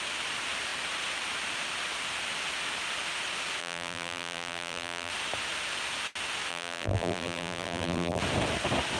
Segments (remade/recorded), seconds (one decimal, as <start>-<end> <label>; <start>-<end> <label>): 0.0-3.6 recorded; 3.6-5.1 remade; 5.1-6.5 recorded; 6.5-8.2 remade; 8.2-9.0 recorded